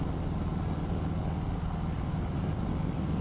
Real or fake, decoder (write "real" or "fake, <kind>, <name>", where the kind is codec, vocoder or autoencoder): real